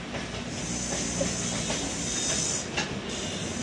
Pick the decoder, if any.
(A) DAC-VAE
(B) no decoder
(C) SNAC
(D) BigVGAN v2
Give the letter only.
B